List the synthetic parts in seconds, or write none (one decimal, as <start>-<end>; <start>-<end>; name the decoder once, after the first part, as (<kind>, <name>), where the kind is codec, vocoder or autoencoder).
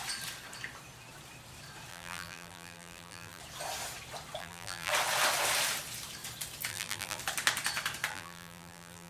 1.9-3.4 (vocoder, BigVGAN v2); 4.4-4.9; 6.7-7.2; 8.1-9.1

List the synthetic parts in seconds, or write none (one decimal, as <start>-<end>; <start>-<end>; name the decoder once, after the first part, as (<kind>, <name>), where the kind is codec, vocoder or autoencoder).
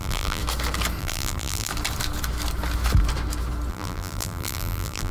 0.0-0.4 (vocoder, BigVGAN v2); 1.0-1.7; 3.7-5.1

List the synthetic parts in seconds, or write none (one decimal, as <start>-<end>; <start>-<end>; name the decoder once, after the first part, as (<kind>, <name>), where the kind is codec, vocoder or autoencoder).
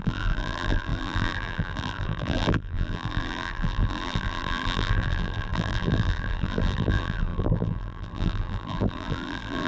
0.0-9.7 (vocoder, BigVGAN v2)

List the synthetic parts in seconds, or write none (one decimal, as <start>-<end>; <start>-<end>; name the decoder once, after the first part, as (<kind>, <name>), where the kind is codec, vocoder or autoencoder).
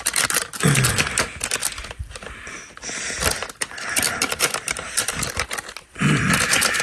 1.6-5.7 (vocoder, BigVGAN v2)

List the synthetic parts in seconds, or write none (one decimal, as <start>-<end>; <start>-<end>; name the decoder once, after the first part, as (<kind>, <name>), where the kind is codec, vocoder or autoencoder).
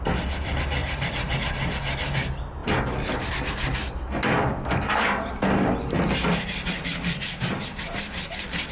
0.8-1.3 (vocoder, BigVGAN v2)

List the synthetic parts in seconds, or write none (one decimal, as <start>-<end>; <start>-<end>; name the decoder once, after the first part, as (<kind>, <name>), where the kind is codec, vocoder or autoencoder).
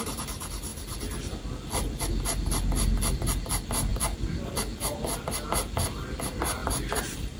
0.7-1.4 (vocoder, BigVGAN v2); 6.6-7.4